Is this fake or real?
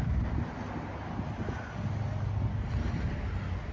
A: real